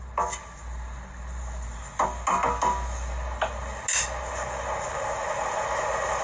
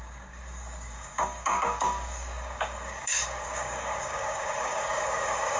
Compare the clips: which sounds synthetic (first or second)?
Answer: second